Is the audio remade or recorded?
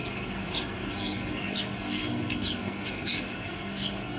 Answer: remade